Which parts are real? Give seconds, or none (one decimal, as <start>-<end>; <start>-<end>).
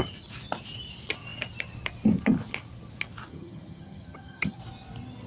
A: 0.0-3.3; 4.6-5.3